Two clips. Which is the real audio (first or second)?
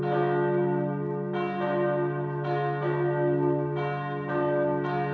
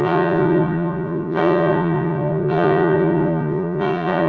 first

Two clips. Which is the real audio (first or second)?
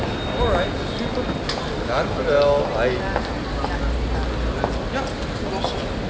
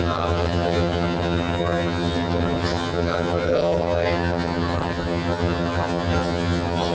first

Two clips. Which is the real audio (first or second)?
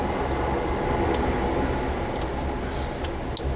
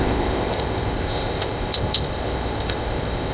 first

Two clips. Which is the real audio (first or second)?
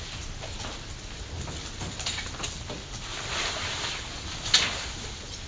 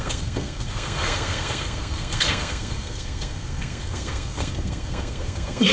first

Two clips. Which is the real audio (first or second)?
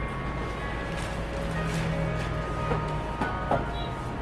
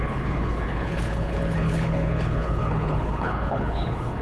first